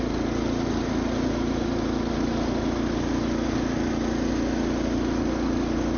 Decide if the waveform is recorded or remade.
recorded